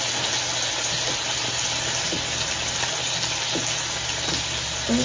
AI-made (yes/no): no